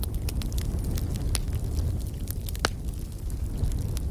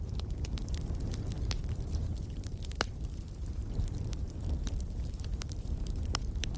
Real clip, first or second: first